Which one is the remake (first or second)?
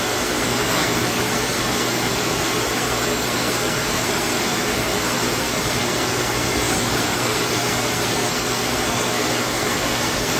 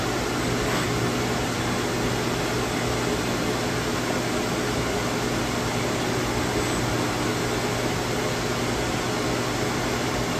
first